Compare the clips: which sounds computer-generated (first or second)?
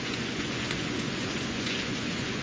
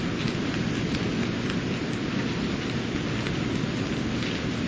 first